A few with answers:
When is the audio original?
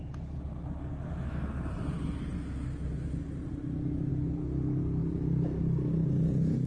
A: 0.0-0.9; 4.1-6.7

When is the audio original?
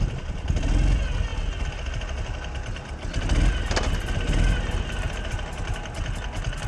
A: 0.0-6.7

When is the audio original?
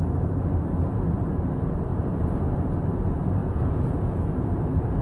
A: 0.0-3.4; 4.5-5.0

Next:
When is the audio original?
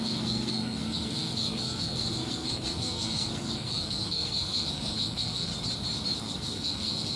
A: 5.5-6.2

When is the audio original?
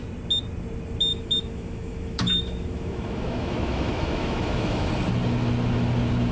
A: 0.0-1.1; 4.9-6.3